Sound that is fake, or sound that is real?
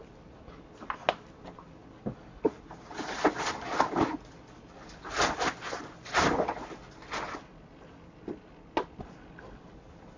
real